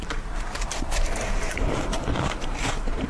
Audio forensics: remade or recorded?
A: remade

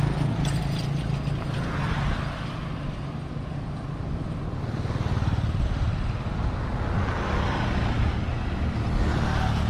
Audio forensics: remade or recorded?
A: recorded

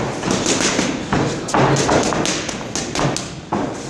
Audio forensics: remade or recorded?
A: recorded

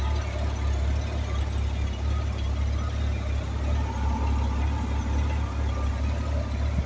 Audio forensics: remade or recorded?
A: recorded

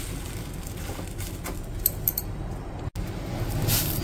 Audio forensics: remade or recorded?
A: recorded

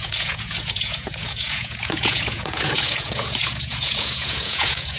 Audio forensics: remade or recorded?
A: remade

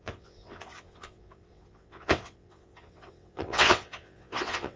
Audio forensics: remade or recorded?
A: remade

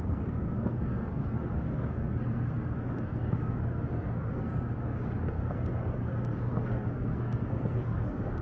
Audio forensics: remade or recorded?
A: remade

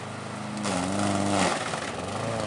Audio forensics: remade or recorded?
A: recorded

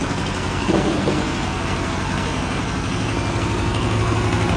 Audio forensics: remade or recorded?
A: remade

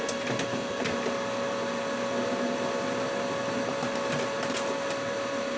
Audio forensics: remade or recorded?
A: recorded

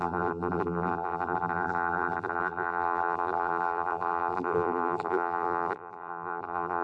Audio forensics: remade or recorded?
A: remade